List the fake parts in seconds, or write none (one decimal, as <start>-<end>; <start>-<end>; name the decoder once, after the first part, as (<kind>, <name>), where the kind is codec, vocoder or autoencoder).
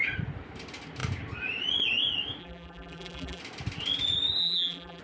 2.4-3.4 (vocoder, BigVGAN v2); 4.4-5.0